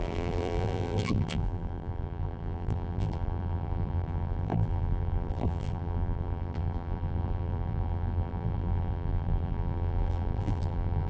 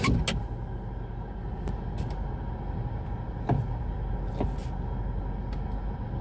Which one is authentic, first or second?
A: second